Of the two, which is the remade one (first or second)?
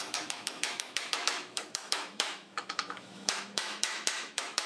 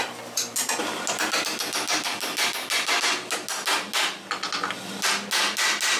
first